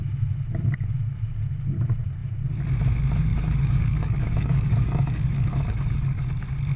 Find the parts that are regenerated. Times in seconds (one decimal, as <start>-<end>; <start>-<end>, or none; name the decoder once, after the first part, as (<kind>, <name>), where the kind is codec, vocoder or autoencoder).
3.3-6.2 (codec, DAC)